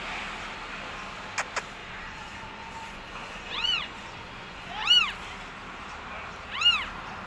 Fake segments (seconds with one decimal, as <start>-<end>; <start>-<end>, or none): 1.8-4.7

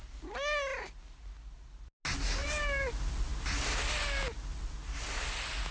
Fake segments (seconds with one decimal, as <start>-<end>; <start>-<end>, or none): 3.3-3.8

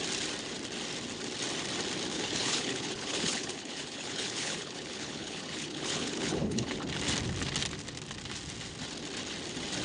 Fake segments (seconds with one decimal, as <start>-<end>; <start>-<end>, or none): 2.1-6.8

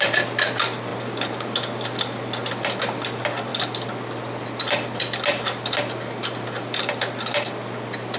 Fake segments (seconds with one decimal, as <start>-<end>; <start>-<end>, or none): none

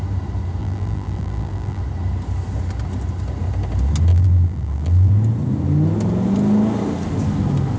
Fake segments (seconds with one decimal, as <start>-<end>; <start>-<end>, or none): 0.6-1.8; 4.1-5.1

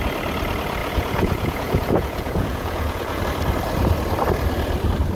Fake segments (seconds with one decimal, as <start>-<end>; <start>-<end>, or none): 0.8-3.2